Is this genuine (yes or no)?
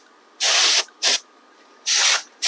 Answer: yes